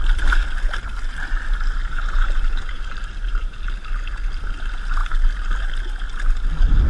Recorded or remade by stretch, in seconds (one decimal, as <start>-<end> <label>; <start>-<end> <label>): 0.0-1.8 recorded; 1.8-3.7 remade; 3.7-6.9 recorded